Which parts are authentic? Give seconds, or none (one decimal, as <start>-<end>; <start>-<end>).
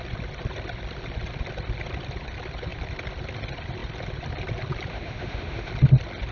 0.0-4.9; 5.7-6.3